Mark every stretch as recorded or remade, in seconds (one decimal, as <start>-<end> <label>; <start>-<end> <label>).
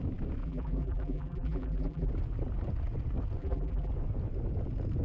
0.0-0.4 recorded; 0.4-2.1 remade; 2.1-3.4 recorded; 3.4-3.9 remade; 3.9-5.0 recorded